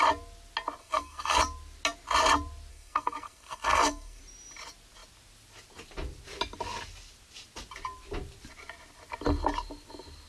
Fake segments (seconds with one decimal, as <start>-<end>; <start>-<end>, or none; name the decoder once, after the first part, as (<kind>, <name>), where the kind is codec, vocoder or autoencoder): 0.8-1.4 (codec, SNAC); 2.7-4.2